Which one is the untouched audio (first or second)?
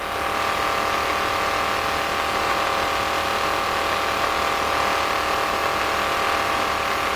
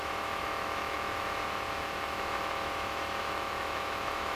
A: first